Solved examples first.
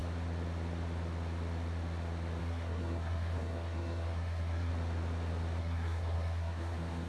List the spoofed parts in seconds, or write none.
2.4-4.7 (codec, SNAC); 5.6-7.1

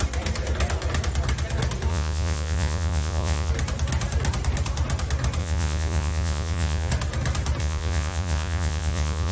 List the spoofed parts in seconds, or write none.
1.9-3.5 (vocoder, Vocos); 5.4-6.9; 7.6-9.3

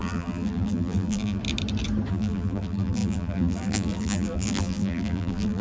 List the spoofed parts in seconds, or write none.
0.0-1.4 (vocoder, BigVGAN v2); 2.1-5.6

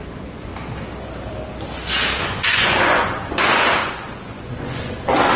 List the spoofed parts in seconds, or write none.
0.0-0.5 (vocoder, Vocos); 2.2-5.4

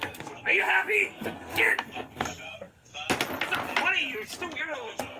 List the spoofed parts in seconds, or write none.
0.0-2.9 (codec, SNAC); 4.6-5.2

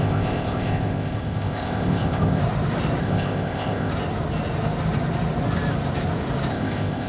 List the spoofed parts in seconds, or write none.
0.0-2.4 (codec, ZipCodec); 3.0-3.9; 6.5-7.1

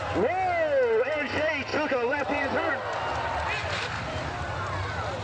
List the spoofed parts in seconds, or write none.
1.7-2.7 (vocoder, BigVGAN v2); 3.6-4.8